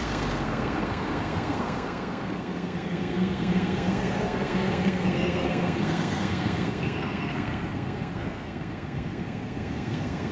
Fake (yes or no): yes